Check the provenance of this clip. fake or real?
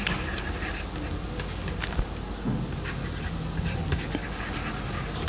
real